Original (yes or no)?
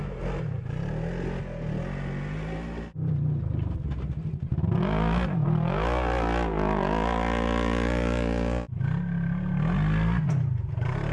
yes